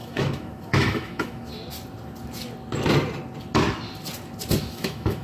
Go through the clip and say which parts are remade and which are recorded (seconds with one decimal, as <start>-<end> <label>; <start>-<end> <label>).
0.0-1.5 remade; 1.5-4.6 recorded; 4.6-5.2 remade